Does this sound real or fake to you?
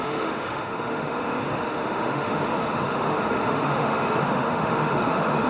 fake